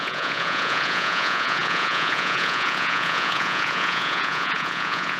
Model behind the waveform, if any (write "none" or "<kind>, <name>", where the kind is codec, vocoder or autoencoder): vocoder, Vocos